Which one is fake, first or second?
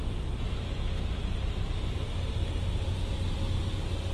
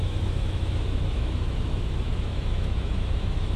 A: second